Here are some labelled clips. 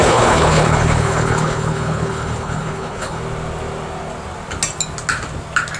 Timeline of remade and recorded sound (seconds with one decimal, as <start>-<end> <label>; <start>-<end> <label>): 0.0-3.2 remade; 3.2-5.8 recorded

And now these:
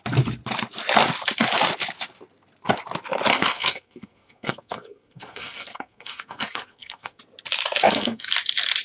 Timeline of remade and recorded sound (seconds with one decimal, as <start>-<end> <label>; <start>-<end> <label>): 0.0-3.3 recorded; 3.3-7.2 remade; 7.2-7.8 recorded; 7.8-8.3 remade; 8.3-8.8 recorded

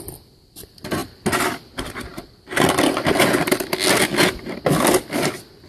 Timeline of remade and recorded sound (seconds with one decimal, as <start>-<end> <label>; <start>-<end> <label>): 0.0-5.7 recorded

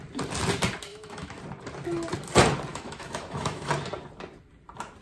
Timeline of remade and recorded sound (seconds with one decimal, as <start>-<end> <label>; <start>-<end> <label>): 0.0-0.9 recorded; 0.9-1.4 remade; 1.4-2.7 recorded; 2.7-3.7 remade; 3.7-5.0 recorded